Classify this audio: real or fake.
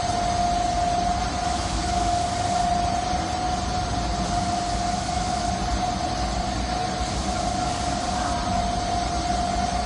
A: real